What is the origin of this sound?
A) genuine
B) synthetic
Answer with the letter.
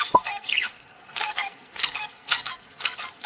B